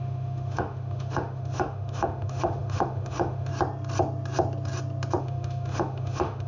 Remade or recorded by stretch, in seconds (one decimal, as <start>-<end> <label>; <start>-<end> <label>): 0.0-3.5 remade; 3.5-5.2 recorded; 5.2-6.5 remade